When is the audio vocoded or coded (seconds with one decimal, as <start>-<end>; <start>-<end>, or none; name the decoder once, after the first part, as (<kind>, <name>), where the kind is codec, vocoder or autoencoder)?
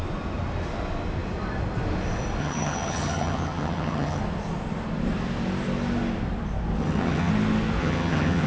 2.4-4.2 (vocoder, HiFi-GAN); 6.8-7.3; 7.8-8.5